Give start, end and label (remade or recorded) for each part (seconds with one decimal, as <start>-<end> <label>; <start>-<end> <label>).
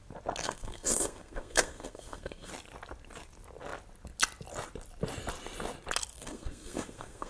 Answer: 0.0-0.4 recorded; 0.4-2.5 remade; 2.5-6.1 recorded; 6.1-7.3 remade